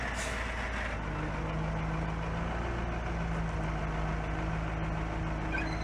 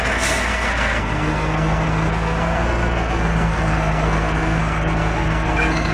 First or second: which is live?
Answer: first